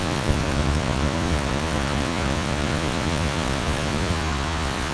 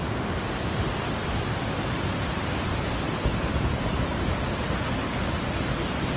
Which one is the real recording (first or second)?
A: second